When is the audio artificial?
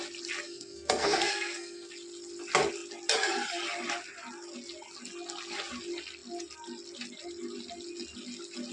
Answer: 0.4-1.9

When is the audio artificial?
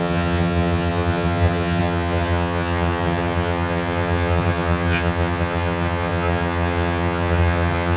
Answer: 0.0-8.0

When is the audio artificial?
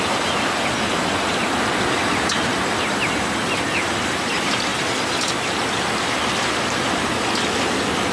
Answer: none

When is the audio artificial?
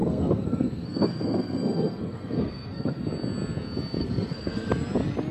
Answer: 0.0-3.0; 4.0-4.7